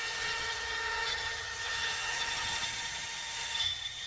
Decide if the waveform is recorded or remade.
remade